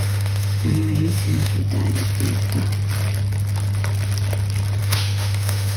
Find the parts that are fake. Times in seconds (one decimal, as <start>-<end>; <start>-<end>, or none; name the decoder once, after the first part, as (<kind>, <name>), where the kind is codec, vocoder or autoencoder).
0.0-1.6 (autoencoder, DAC-VAE); 4.8-5.8